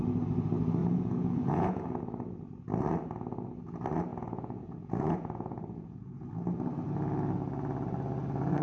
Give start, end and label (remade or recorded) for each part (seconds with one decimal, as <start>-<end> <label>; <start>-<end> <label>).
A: 0.0-0.8 recorded; 0.8-2.0 remade; 2.0-4.1 recorded; 4.1-6.3 remade; 6.3-8.6 recorded